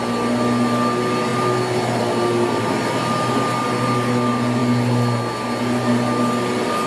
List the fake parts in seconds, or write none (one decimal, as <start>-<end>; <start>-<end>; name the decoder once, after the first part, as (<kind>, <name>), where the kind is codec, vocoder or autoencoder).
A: none